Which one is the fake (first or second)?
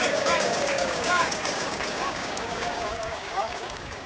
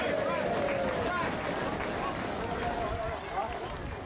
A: first